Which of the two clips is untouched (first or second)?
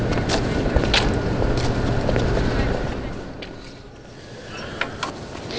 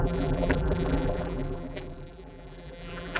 first